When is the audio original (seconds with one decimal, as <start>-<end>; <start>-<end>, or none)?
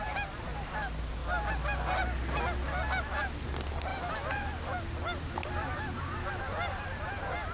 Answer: 0.0-7.5